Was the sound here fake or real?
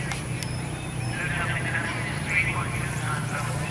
fake